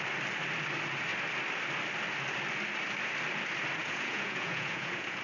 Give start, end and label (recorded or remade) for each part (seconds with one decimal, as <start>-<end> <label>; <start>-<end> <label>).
0.0-3.8 recorded; 3.8-5.2 remade